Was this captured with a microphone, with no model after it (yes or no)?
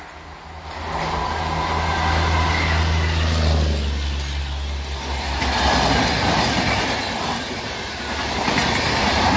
yes